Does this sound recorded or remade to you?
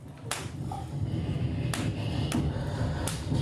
recorded